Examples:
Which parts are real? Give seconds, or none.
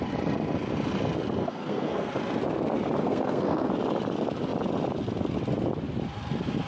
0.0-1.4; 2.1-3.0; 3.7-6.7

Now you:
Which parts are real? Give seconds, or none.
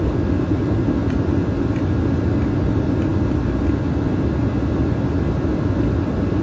0.0-6.4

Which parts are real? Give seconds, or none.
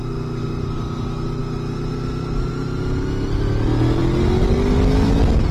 0.0-5.5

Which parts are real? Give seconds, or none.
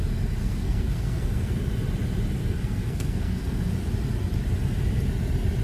0.0-0.4; 1.6-2.4; 3.7-5.6